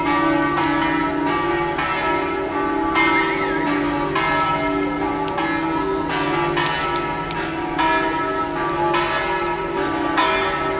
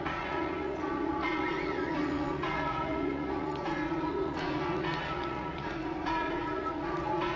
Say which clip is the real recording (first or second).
first